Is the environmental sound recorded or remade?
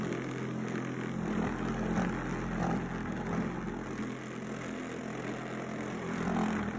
recorded